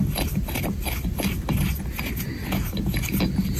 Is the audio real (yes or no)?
yes